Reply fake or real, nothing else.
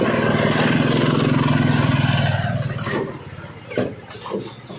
real